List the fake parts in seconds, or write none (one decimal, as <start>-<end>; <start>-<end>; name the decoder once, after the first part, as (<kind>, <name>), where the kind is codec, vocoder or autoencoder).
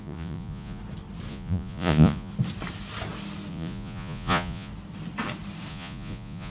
0.0-0.8 (vocoder, Vocos); 1.3-2.3; 3.5-4.7; 5.7-6.5